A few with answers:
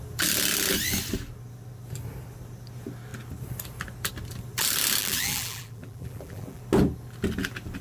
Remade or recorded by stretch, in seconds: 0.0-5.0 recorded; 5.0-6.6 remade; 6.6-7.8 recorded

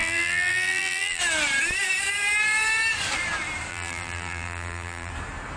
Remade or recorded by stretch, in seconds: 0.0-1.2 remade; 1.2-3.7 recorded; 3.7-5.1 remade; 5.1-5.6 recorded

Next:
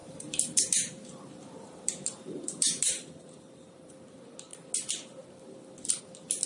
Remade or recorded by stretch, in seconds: 0.0-3.9 remade; 3.9-6.5 recorded

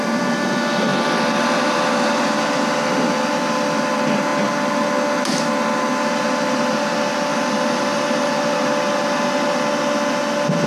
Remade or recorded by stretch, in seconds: 0.0-0.9 recorded; 0.9-2.1 remade; 2.1-7.3 recorded; 7.3-8.3 remade; 8.3-10.7 recorded